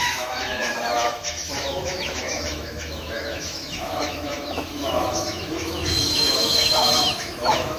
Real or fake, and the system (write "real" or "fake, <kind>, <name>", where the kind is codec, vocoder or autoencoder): fake, autoencoder, DAC-VAE